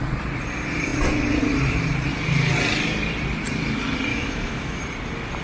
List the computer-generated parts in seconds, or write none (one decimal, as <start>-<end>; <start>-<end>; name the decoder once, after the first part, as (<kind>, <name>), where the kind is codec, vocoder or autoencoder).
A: 4.1-4.8 (autoencoder, DAC-VAE)